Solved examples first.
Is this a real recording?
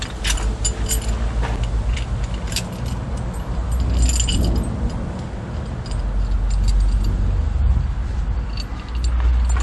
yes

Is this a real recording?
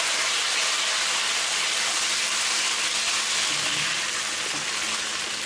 yes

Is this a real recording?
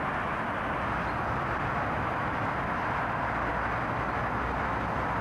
yes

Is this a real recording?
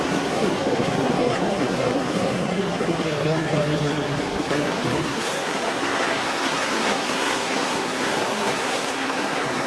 no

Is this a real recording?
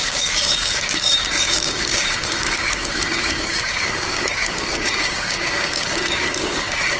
no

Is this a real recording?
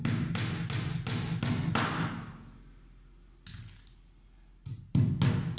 yes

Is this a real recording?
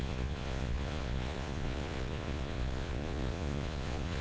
no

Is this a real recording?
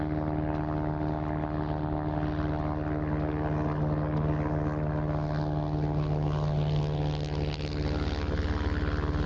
yes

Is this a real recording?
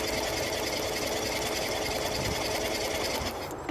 yes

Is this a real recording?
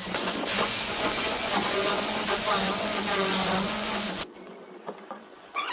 no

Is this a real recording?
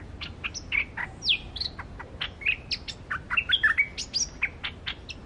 yes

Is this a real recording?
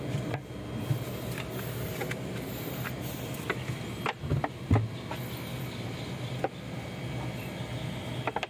yes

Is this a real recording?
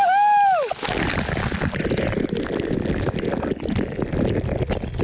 yes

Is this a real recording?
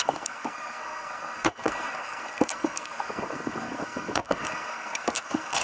no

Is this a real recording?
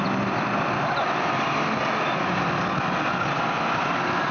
yes